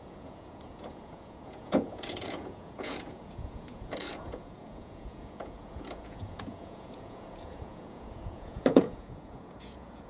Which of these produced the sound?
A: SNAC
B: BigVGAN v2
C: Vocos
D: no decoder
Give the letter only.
C